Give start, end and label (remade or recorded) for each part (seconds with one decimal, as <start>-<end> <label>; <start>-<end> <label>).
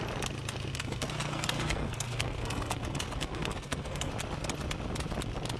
0.0-0.7 recorded; 0.7-4.1 remade; 4.1-5.6 recorded